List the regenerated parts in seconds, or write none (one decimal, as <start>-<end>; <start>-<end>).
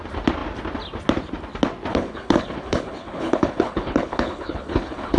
1.9-5.2